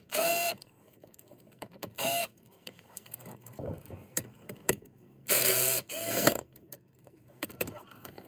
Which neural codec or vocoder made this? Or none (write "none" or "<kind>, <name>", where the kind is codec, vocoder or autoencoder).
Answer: codec, SNAC